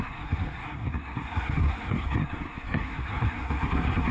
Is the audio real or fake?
fake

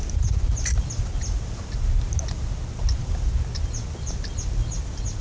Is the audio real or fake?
real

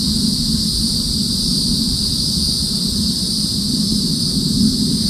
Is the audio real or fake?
real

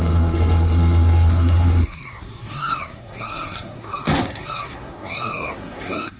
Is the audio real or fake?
fake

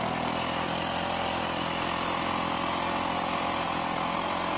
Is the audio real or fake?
real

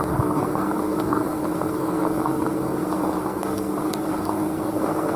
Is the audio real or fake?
fake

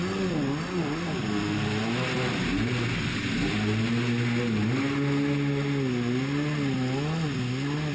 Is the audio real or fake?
real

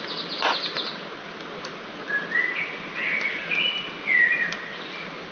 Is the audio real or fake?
real